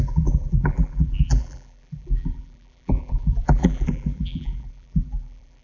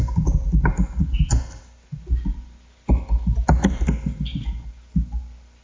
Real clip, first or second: second